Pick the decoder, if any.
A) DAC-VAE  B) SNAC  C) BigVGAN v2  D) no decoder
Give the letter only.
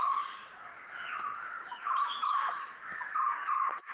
A